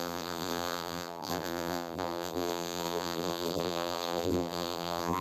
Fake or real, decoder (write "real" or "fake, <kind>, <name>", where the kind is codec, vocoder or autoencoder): fake, vocoder, BigVGAN v2